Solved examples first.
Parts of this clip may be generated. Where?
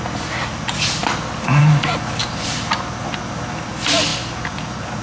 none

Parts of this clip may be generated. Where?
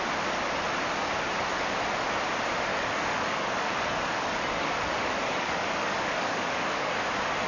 2.7-7.1 (codec, DAC)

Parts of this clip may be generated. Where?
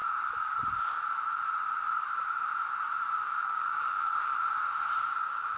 3.4-4.3 (codec, DAC); 5.0-5.6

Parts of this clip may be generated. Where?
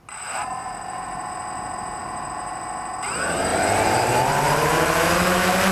0.4-1.3 (vocoder, BigVGAN v2); 2.0-2.7; 3.5-5.1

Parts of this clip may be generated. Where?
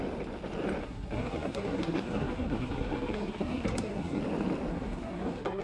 0.8-4.2 (codec, SNAC); 4.7-5.6